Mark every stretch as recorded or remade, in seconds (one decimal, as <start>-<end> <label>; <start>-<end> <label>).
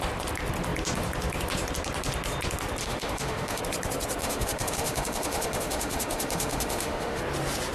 0.0-2.8 recorded; 2.8-3.6 remade; 3.6-4.2 recorded; 4.2-7.2 remade; 7.2-7.7 recorded